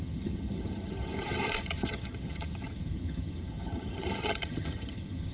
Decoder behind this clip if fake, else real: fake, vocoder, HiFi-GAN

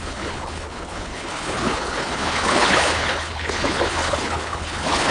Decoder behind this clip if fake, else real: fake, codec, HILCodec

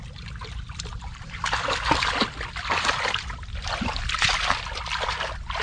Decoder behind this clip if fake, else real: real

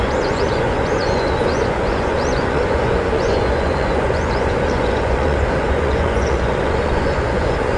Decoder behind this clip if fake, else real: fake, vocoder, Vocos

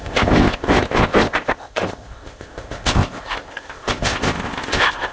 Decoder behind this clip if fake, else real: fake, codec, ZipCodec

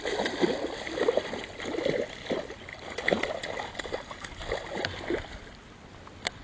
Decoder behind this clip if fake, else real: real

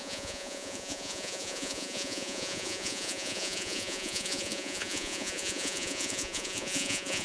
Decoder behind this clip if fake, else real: fake, vocoder, Vocos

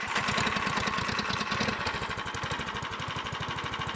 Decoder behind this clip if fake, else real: fake, vocoder, BigVGAN v2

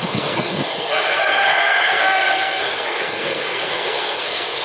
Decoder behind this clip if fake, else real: fake, codec, SNAC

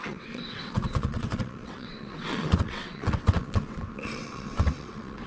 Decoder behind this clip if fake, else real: fake, vocoder, WaveNeXt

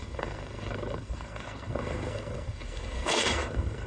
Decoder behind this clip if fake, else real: fake, codec, SNAC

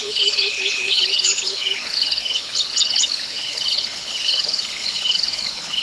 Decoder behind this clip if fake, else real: fake, codec, HILCodec